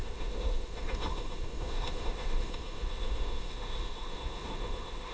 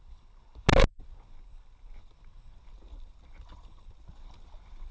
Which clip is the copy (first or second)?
first